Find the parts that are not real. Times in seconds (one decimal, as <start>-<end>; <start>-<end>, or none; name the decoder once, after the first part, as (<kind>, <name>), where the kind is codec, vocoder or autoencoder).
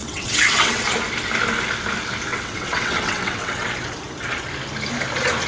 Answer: 0.0-0.8 (vocoder, WaveNeXt); 2.3-3.7